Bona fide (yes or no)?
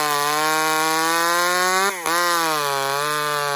yes